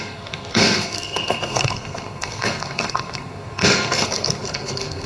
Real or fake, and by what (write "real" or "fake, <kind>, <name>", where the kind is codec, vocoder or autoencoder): fake, codec, SNAC